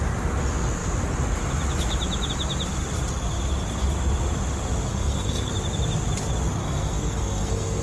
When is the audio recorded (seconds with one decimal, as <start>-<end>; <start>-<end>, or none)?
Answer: 0.0-4.9; 5.5-6.6